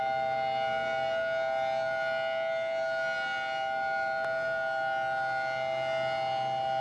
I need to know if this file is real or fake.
real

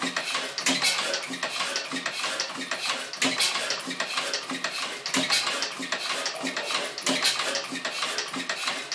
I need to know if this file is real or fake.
real